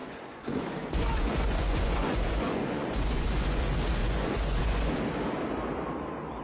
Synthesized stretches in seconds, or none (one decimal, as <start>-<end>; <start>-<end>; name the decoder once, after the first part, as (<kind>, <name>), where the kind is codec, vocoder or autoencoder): 0.0-3.6 (vocoder, Vocos); 4.0-5.0

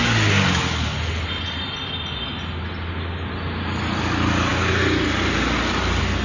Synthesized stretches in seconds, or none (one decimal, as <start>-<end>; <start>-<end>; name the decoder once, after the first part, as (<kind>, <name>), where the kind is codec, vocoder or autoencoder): none

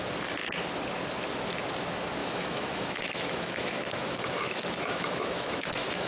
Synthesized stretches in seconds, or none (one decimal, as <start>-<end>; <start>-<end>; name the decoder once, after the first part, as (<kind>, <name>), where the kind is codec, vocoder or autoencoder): 2.2-6.1 (autoencoder, DAC-VAE)

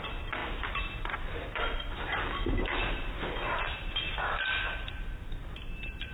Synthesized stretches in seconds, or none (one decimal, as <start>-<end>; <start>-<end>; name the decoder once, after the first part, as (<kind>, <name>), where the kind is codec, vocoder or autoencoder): none